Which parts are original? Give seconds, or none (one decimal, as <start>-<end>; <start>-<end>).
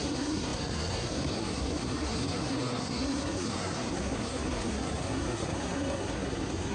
none